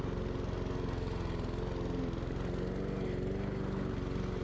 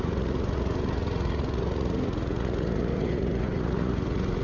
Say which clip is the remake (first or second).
second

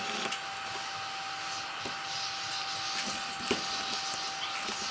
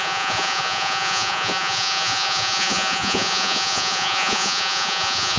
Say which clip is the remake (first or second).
second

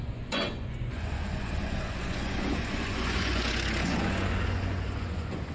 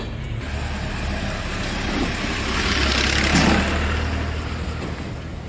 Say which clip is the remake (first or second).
first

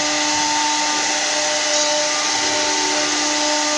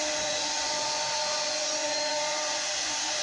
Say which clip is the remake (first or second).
second